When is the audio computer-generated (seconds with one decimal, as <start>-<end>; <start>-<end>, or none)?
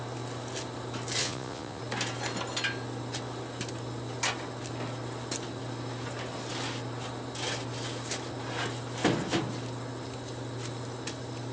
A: 1.2-1.8